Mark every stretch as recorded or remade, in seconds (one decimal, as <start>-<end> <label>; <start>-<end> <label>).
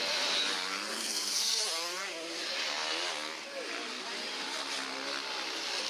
0.0-0.9 recorded; 0.9-1.6 remade; 1.6-5.9 recorded